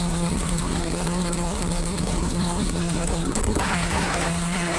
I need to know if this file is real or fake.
fake